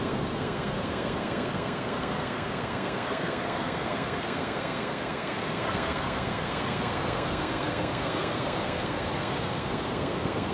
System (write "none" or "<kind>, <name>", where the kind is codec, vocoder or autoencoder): codec, SNAC